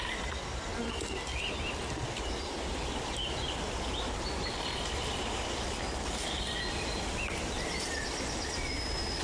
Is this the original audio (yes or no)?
no